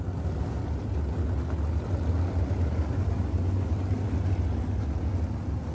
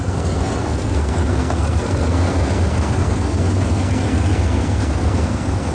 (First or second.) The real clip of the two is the first